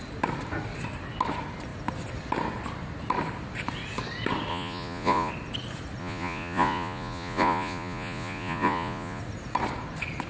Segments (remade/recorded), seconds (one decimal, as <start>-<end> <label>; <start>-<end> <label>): 0.0-4.5 recorded; 4.5-5.3 remade; 5.3-6.0 recorded; 6.0-9.2 remade; 9.2-10.3 recorded